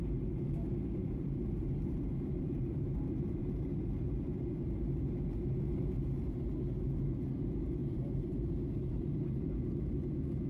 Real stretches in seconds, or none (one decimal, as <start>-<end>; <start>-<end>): 0.0-1.0; 2.8-3.4; 3.9-7.8; 9.7-10.5